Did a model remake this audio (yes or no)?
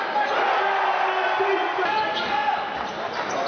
no